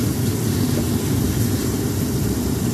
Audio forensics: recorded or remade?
recorded